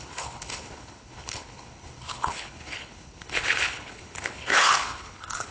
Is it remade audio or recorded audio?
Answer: remade